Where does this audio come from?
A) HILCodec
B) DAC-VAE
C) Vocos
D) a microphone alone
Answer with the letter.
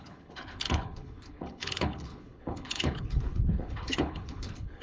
A